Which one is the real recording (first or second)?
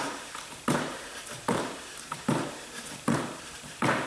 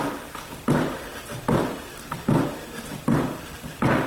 second